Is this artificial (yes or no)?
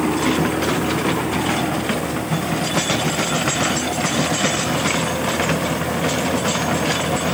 no